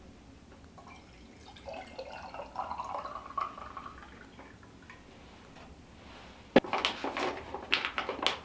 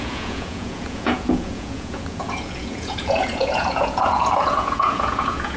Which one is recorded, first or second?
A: first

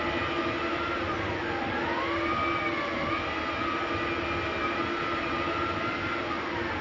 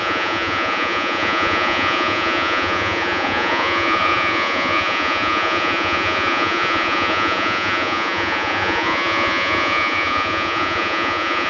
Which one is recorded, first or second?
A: first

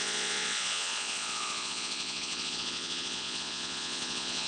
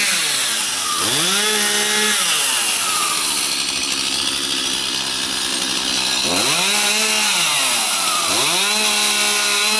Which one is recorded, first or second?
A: second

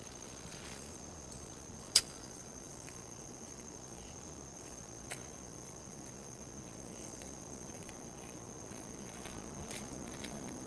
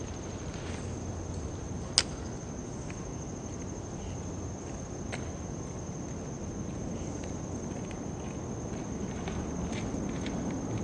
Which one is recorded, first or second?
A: second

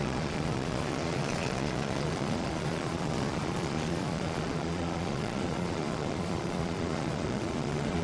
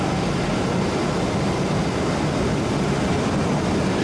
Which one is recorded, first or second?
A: second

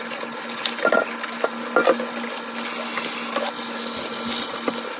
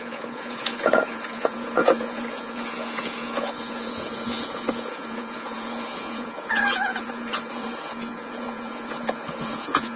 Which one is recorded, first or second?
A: first